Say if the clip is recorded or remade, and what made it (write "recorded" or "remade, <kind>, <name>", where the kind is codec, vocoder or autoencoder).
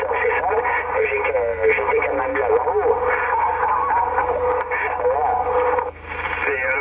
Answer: recorded